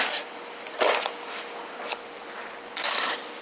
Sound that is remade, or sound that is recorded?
recorded